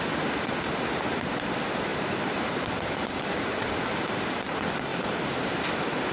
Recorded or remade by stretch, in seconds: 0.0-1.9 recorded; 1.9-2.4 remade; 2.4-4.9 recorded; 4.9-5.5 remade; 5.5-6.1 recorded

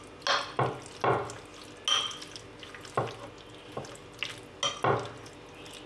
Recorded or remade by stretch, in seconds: 0.0-5.9 recorded

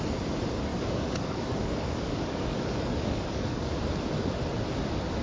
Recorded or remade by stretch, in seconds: 0.0-0.7 recorded; 0.7-3.8 remade; 3.8-5.2 recorded

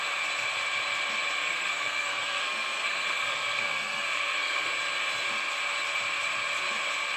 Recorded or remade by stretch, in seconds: 0.0-1.4 recorded; 1.4-4.7 remade; 4.7-7.2 recorded

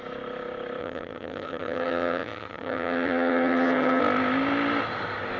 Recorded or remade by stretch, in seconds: 0.0-0.8 recorded; 0.8-4.0 remade; 4.0-5.4 recorded

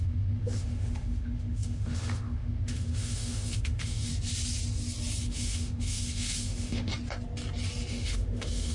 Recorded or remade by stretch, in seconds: 0.0-4.1 remade; 4.1-5.2 recorded; 5.2-6.9 remade; 6.9-7.9 recorded; 7.9-8.7 remade

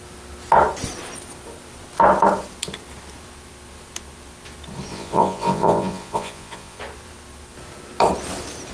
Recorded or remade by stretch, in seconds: 0.0-4.9 recorded; 4.9-6.8 remade; 6.8-8.7 recorded